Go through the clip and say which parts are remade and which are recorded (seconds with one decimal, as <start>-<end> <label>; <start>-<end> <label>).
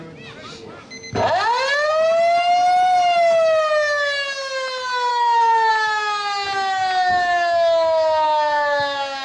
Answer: 0.0-5.1 recorded; 5.1-5.7 remade; 5.7-9.2 recorded